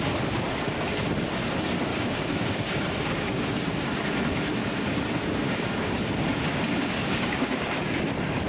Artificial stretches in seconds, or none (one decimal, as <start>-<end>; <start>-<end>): 1.9-3.4; 5.4-7.5